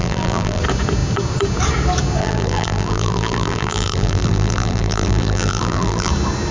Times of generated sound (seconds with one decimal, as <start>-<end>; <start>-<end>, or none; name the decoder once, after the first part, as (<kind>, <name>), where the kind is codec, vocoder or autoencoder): 0.0-0.6 (vocoder, BigVGAN v2); 2.2-6.1